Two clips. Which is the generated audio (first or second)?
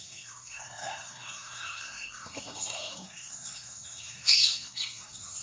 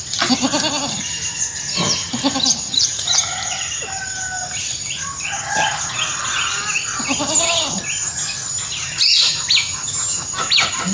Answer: first